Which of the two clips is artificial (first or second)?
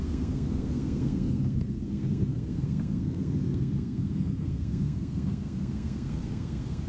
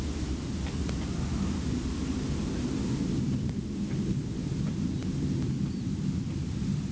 first